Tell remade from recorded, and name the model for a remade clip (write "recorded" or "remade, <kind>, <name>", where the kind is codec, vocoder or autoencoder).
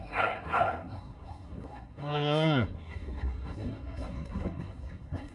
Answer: remade, codec, SNAC